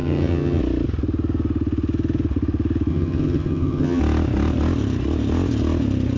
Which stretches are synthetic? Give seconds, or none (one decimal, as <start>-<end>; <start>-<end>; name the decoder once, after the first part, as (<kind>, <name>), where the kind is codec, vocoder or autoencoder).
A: 0.0-0.6 (vocoder, HiFi-GAN); 2.9-4.0